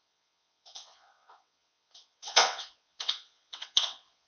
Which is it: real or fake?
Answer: fake